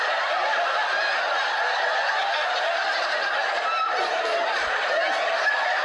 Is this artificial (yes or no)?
no